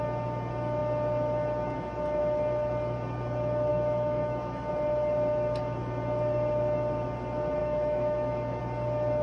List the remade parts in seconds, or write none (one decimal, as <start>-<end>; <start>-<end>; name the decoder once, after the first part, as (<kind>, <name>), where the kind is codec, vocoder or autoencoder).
3.7-4.7 (autoencoder, DAC-VAE); 7.6-8.6